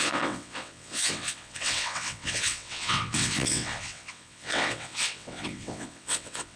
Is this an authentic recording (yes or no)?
no